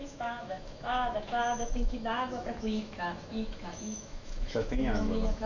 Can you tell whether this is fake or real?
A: fake